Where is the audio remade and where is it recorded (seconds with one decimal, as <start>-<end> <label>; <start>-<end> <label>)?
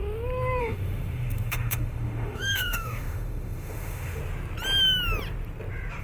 0.0-0.6 recorded; 0.6-4.2 remade; 4.2-6.0 recorded